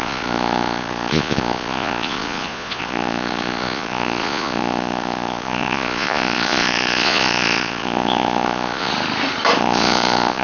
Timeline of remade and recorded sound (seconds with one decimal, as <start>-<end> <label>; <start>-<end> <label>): 0.0-8.9 remade; 8.9-9.6 recorded; 9.6-10.4 remade